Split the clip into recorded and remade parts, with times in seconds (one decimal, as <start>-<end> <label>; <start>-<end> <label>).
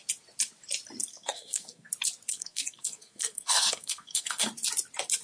0.0-1.1 recorded; 1.1-1.9 remade; 1.9-2.3 recorded; 2.3-4.5 remade; 4.5-5.2 recorded